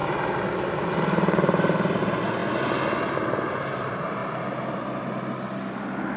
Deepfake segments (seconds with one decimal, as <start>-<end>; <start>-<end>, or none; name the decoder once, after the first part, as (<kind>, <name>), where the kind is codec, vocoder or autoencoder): 0.0-2.4 (vocoder, BigVGAN v2); 3.0-4.2